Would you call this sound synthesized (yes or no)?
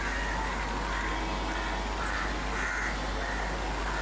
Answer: no